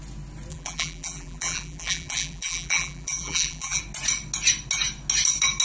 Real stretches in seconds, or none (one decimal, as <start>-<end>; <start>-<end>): 0.0-0.5; 3.8-5.6